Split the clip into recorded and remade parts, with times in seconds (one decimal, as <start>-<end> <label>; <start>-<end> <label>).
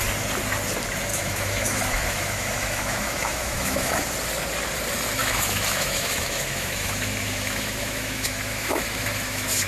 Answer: 0.0-1.1 recorded; 1.1-3.9 remade; 3.9-5.2 recorded; 5.2-9.7 remade